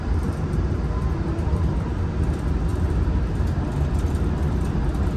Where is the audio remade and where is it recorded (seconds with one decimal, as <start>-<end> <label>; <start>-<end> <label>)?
0.0-1.3 recorded; 1.3-1.9 remade; 1.9-5.2 recorded

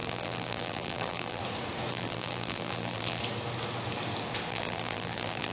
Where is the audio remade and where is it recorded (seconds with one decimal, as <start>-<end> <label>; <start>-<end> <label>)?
0.0-1.4 remade; 1.4-1.9 recorded; 1.9-3.2 remade; 3.2-4.5 recorded; 4.5-5.5 remade

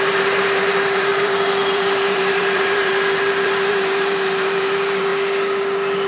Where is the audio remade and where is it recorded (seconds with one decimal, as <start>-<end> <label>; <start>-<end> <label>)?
0.0-5.1 remade; 5.1-6.1 recorded

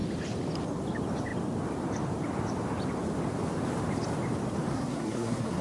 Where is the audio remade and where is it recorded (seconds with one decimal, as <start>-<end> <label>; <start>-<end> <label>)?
0.0-4.7 recorded; 4.7-5.6 remade

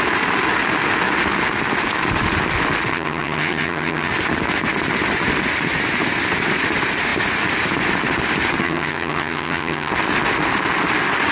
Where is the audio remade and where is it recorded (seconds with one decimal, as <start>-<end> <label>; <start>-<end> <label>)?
0.0-2.9 recorded; 2.9-4.1 remade; 4.1-8.6 recorded; 8.6-9.9 remade; 9.9-11.3 recorded